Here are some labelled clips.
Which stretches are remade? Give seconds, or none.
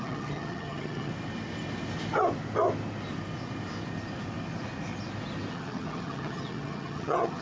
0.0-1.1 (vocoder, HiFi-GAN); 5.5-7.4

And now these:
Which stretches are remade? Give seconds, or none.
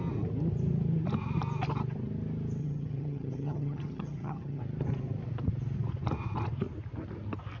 2.6-4.6 (vocoder, HiFi-GAN)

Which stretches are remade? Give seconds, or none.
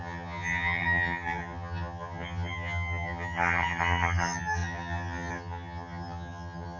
0.0-6.8 (vocoder, HiFi-GAN)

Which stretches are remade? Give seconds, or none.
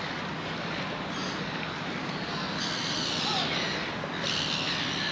none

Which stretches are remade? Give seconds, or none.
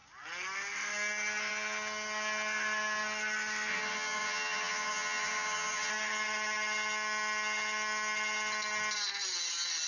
3.7-5.9 (vocoder, HiFi-GAN)